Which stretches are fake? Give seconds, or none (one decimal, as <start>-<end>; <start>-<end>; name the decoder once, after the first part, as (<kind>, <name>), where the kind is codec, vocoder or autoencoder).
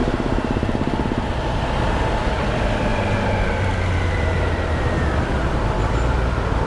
1.9-2.9 (vocoder, BigVGAN v2); 3.5-6.7